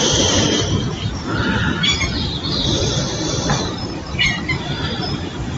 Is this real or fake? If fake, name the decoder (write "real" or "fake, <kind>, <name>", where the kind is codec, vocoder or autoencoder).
fake, vocoder, BigVGAN v2